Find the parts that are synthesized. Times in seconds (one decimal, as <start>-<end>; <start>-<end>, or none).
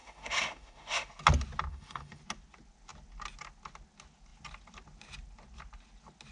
0.0-1.1; 1.7-2.2